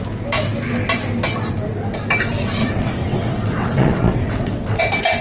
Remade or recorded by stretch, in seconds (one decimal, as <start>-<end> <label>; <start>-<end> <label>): 0.0-2.6 recorded; 2.6-4.8 remade; 4.8-5.2 recorded